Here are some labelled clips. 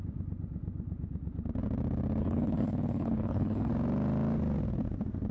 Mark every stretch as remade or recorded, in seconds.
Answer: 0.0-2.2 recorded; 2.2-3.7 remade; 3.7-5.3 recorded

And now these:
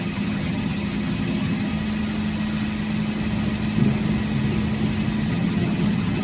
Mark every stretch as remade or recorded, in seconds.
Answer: 0.0-1.7 remade; 1.7-5.3 recorded; 5.3-6.2 remade

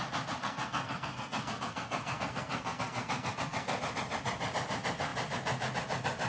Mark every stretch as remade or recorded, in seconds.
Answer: 0.0-0.4 recorded; 0.4-3.8 remade; 3.8-6.3 recorded

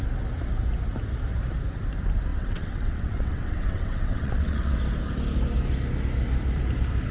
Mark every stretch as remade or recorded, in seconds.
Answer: 0.0-2.3 recorded; 2.3-4.8 remade; 4.8-7.1 recorded

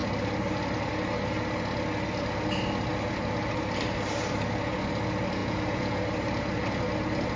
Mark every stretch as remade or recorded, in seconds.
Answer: 0.0-5.4 recorded; 5.4-6.0 remade; 6.0-7.4 recorded

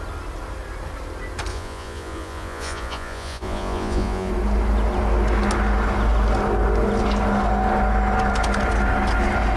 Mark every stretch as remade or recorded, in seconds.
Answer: 0.0-1.5 recorded; 1.5-4.3 remade; 4.3-9.6 recorded

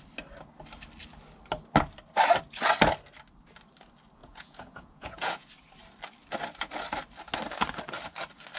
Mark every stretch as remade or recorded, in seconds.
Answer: 0.0-4.2 recorded; 4.2-5.5 remade; 5.5-8.6 recorded

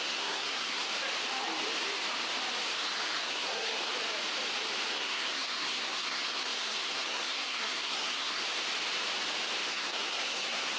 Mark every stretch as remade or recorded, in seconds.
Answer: 0.0-0.9 remade; 0.9-3.2 recorded; 3.2-3.9 remade; 3.9-4.9 recorded; 4.9-8.4 remade; 8.4-9.7 recorded; 9.7-10.8 remade